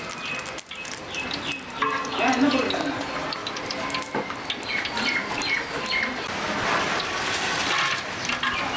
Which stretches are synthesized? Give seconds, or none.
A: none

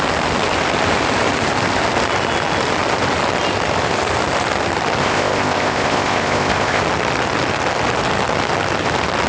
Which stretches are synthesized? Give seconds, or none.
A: 5.0-6.8